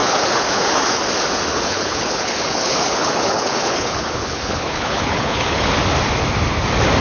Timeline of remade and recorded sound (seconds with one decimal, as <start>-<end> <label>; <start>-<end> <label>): 0.0-1.0 remade; 1.0-1.5 recorded; 1.5-5.7 remade; 5.7-7.0 recorded